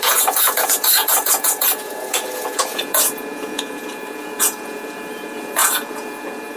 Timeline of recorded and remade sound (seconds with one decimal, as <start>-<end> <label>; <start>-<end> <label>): 0.0-6.6 remade